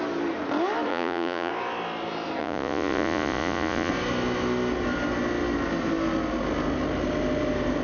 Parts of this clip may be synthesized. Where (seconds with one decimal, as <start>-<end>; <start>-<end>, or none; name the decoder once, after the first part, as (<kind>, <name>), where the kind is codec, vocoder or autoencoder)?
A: 0.9-1.5 (vocoder, Vocos); 2.4-3.9